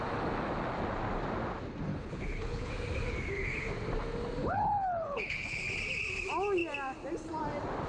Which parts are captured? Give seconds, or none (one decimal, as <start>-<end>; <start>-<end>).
0.0-1.9; 2.7-4.4; 5.6-7.9